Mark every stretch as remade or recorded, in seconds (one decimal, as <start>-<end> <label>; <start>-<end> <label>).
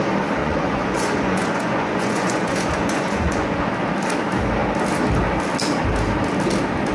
0.0-0.4 recorded; 0.4-3.7 remade; 3.7-6.9 recorded